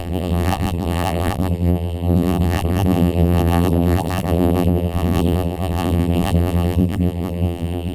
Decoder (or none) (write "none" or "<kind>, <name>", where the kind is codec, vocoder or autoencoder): vocoder, BigVGAN v2